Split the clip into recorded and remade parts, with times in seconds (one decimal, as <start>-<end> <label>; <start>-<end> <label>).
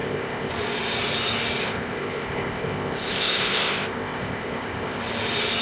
0.0-0.5 remade; 0.5-1.6 recorded; 1.6-5.0 remade; 5.0-5.6 recorded